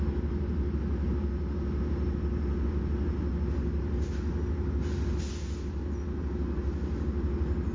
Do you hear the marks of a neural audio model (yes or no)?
no